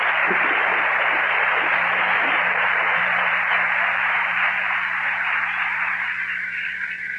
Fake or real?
fake